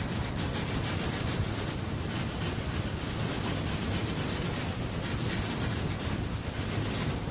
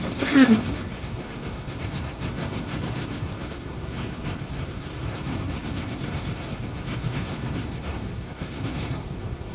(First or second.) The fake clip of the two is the second